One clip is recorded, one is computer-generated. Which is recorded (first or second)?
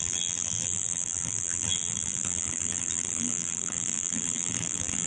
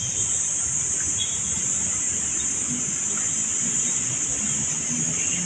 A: second